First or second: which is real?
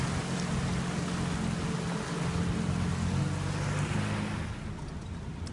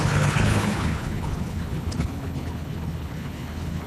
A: first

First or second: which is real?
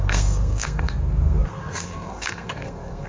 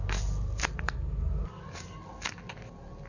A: second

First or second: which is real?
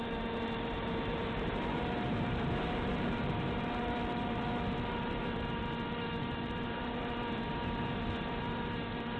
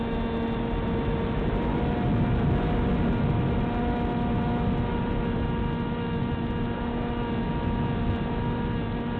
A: second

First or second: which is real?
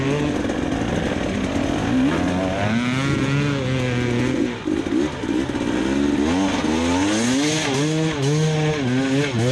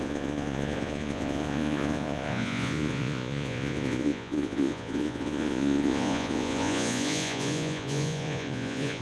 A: first